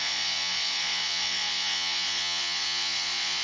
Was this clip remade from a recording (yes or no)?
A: yes